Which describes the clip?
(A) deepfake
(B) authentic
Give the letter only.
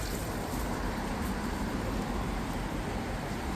A